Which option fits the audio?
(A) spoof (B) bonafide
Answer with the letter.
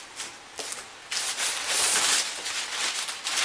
B